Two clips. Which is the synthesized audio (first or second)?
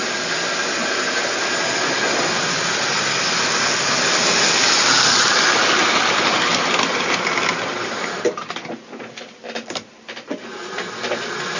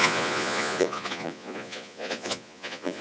second